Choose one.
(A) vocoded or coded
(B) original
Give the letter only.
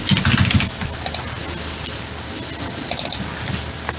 B